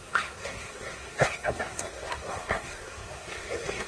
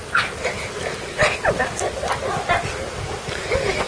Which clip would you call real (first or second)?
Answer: second